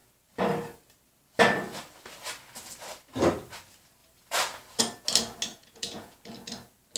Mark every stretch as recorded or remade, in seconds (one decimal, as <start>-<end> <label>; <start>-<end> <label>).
0.0-5.5 recorded; 5.5-6.2 remade; 6.2-7.0 recorded